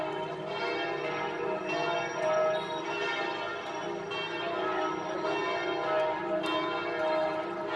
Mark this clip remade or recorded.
recorded